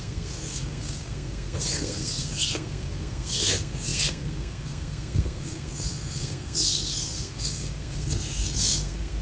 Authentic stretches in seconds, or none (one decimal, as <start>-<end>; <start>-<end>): none